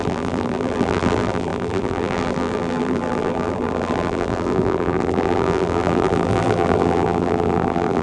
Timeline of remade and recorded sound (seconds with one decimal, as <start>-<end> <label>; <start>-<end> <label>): 0.0-8.0 remade

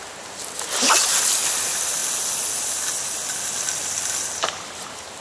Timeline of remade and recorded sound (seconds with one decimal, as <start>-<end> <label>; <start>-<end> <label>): 0.0-5.2 recorded

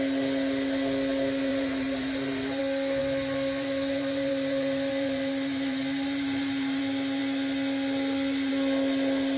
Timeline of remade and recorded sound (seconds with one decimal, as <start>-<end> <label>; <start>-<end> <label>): 0.0-1.5 recorded; 1.5-2.6 remade; 2.6-3.0 recorded; 3.0-6.8 remade; 6.8-9.4 recorded

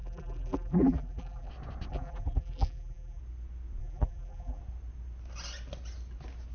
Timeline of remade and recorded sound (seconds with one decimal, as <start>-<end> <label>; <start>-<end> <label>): 0.0-1.5 remade; 1.5-1.9 recorded; 1.9-3.2 remade; 3.2-3.8 recorded; 3.8-4.6 remade; 4.6-6.5 recorded

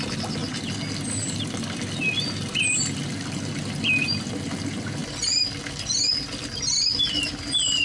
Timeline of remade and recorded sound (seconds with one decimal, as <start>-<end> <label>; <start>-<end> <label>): 0.0-7.8 recorded

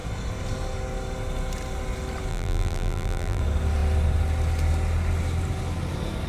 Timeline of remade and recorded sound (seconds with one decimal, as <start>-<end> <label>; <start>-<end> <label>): 0.0-2.3 recorded; 2.3-3.4 remade; 3.4-6.3 recorded

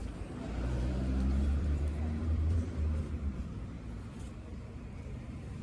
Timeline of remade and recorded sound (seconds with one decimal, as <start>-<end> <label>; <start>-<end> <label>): 0.0-3.4 remade; 3.4-4.5 recorded; 4.5-5.6 remade